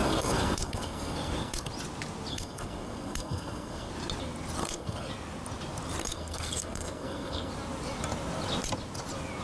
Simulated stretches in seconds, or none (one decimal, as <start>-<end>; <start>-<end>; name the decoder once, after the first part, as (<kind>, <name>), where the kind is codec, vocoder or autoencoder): 0.0-1.7 (codec, SNAC); 2.3-3.9; 4.6-5.1; 6.0-7.5